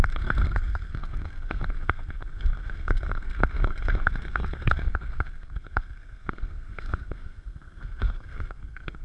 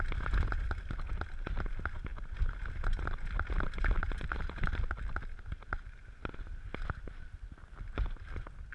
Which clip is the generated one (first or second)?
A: first